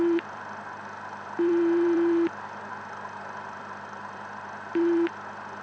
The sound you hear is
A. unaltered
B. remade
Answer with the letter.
B